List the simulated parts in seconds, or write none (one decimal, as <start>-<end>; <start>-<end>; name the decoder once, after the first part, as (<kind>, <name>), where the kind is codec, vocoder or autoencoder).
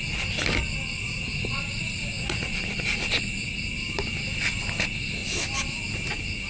1.0-3.5 (vocoder, Vocos)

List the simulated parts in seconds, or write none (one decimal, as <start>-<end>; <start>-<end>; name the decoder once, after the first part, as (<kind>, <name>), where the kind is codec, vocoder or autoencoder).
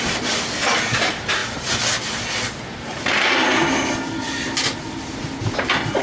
none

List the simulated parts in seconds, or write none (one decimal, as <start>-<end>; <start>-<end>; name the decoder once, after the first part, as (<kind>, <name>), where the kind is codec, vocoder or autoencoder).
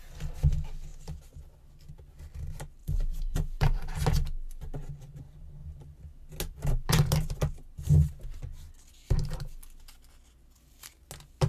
2.8-3.8 (vocoder, BigVGAN v2)